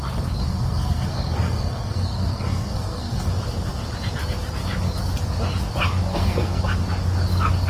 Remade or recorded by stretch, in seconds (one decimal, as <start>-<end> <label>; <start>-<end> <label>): 0.0-0.5 recorded; 0.5-3.3 remade; 3.3-6.1 recorded; 6.1-6.6 remade; 6.6-7.7 recorded

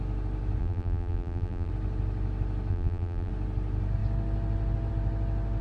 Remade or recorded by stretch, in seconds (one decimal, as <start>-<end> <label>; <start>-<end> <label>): 0.0-0.6 recorded; 0.6-1.7 remade; 1.7-2.7 recorded; 2.7-3.3 remade; 3.3-5.6 recorded

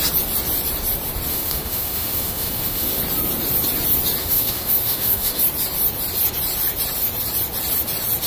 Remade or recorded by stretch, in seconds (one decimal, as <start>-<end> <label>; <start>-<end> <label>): 0.0-1.3 recorded; 1.3-3.0 remade; 3.0-4.2 recorded; 4.2-5.4 remade; 5.4-8.3 recorded

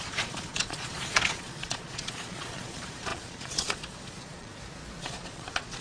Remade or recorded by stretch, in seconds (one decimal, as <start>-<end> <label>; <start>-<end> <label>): 0.0-4.5 remade; 4.5-5.0 recorded; 5.0-5.8 remade

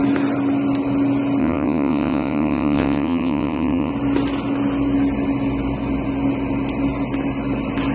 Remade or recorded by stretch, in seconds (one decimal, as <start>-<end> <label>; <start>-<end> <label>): 0.0-1.4 recorded; 1.4-3.9 remade; 3.9-7.9 recorded

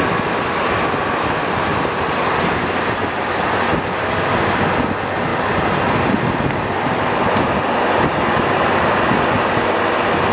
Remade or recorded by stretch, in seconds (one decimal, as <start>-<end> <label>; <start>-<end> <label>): 0.0-10.3 recorded

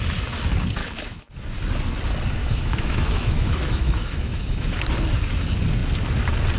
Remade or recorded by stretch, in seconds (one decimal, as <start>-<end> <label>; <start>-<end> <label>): 0.0-0.8 recorded; 0.8-1.3 remade; 1.3-2.4 recorded; 2.4-4.8 remade; 4.8-6.6 recorded